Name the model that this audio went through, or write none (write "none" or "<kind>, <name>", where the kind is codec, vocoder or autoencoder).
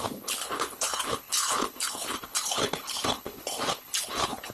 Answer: codec, HILCodec